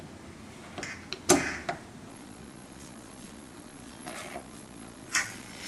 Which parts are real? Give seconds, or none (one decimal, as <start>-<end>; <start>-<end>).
0.0-2.1